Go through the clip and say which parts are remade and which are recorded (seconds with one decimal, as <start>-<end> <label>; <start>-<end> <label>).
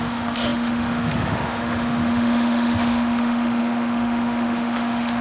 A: 0.0-5.2 remade